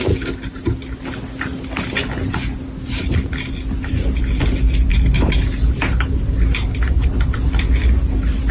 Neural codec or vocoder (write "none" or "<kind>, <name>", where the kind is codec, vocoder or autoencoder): none